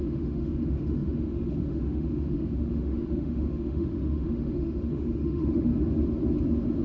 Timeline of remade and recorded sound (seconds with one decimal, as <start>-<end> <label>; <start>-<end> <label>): 0.0-5.7 remade; 5.7-6.8 recorded